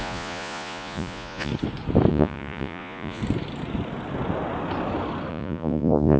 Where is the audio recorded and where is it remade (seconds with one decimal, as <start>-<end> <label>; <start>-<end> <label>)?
0.0-1.5 remade; 1.5-2.1 recorded; 2.1-3.2 remade; 3.2-5.3 recorded; 5.3-6.2 remade